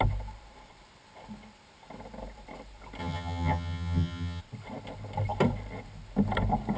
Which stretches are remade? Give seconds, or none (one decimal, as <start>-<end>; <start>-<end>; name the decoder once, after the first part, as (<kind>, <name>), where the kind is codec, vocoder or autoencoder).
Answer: 3.0-4.4 (vocoder, HiFi-GAN)